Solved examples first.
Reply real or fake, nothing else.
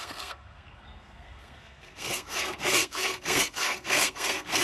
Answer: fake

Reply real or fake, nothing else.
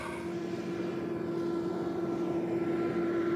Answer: real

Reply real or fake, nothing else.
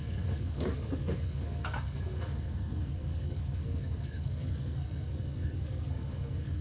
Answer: fake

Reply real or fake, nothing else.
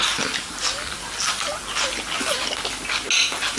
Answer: real